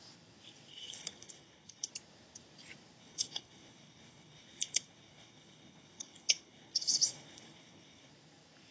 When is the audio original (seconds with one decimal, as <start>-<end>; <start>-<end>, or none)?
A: 0.0-0.7; 1.9-3.0; 8.1-8.7